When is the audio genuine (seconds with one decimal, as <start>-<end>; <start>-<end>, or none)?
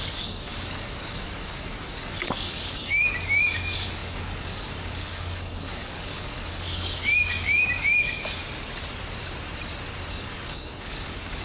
8.4-10.1